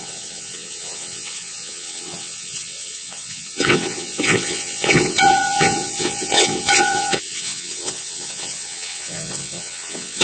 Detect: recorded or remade remade